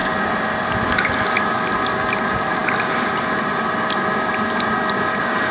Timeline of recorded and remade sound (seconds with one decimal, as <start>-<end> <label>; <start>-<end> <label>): 0.0-5.5 recorded